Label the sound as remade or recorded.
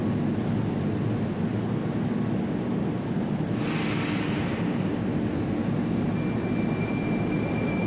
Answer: recorded